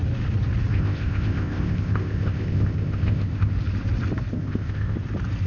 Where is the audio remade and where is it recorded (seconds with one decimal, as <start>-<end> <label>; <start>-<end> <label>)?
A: 0.0-0.7 recorded; 0.7-3.5 remade; 3.5-4.3 recorded; 4.3-5.0 remade; 5.0-5.5 recorded